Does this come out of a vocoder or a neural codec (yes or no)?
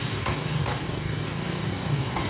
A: yes